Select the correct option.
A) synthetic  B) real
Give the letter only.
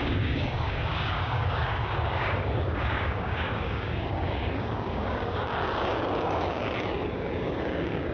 A